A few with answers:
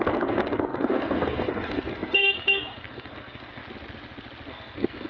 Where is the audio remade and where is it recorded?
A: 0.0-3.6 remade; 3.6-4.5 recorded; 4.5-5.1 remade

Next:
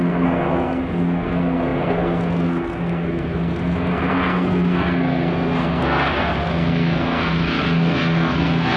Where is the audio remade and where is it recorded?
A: 0.0-8.8 remade

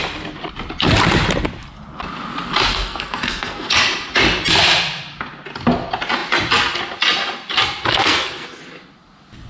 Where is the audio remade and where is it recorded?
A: 0.0-2.7 recorded; 2.7-3.7 remade; 3.7-7.9 recorded; 7.9-8.6 remade; 8.6-9.5 recorded

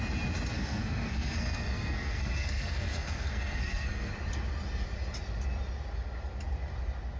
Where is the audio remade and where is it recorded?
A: 0.0-0.5 recorded; 0.5-4.1 remade; 4.1-7.2 recorded

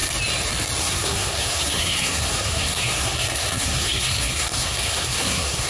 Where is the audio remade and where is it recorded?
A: 0.0-0.8 recorded; 0.8-5.7 remade

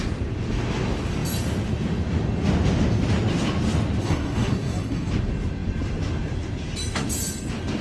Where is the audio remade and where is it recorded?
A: 0.0-4.0 recorded; 4.0-5.1 remade; 5.1-7.8 recorded

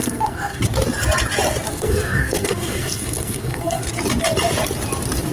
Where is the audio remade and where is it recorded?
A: 0.0-0.6 remade; 0.6-1.7 recorded; 1.7-3.8 remade; 3.8-5.3 recorded